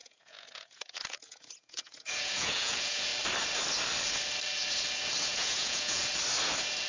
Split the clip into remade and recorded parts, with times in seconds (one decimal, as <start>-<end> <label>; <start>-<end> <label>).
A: 0.0-3.1 remade; 3.1-5.2 recorded; 5.2-6.1 remade; 6.1-6.9 recorded